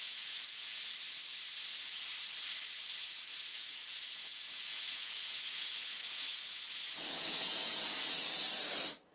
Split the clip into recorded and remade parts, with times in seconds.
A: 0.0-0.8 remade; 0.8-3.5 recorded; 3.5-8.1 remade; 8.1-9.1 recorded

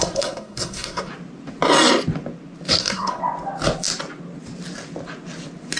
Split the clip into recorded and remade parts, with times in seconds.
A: 0.0-1.1 remade; 1.1-2.8 recorded; 2.8-3.2 remade; 3.2-5.8 recorded

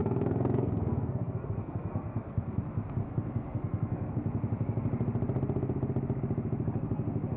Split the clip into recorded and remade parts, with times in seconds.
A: 0.0-2.6 remade; 2.6-3.0 recorded; 3.0-4.1 remade; 4.1-7.4 recorded

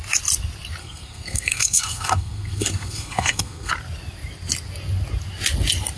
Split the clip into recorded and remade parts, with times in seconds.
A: 0.0-0.8 recorded; 0.8-3.7 remade; 3.7-6.0 recorded

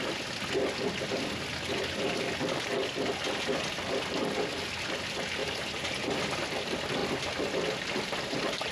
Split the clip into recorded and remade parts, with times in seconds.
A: 0.0-5.4 recorded; 5.4-5.9 remade; 5.9-8.7 recorded

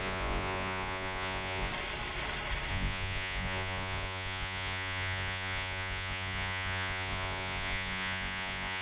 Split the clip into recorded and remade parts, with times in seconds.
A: 0.0-1.7 remade; 1.7-2.7 recorded; 2.7-8.8 remade

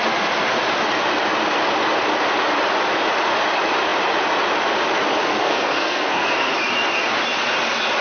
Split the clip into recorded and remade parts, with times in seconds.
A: 0.0-5.2 recorded; 5.2-6.5 remade; 6.5-8.0 recorded

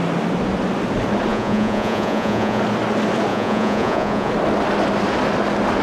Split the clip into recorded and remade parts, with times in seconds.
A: 0.0-1.3 recorded; 1.3-2.6 remade; 2.6-3.3 recorded; 3.3-4.3 remade; 4.3-5.8 recorded